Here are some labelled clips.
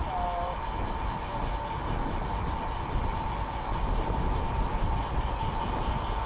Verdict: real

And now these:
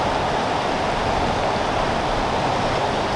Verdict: real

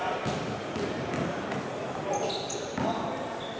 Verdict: real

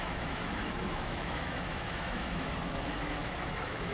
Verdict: fake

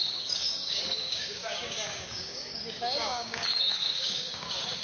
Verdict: fake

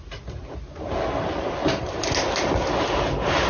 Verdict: real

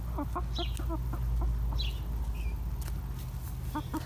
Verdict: real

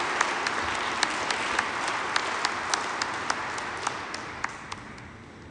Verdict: real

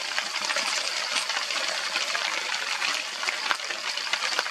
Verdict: fake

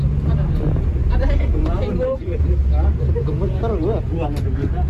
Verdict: real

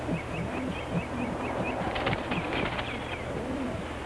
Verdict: fake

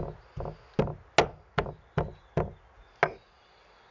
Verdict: real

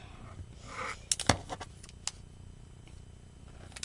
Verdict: real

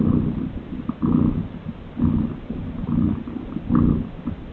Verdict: real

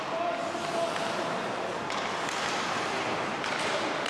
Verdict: real